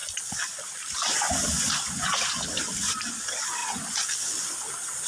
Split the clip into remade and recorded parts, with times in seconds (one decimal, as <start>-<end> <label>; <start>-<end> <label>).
0.0-5.1 recorded